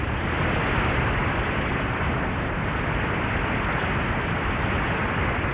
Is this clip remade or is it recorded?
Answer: recorded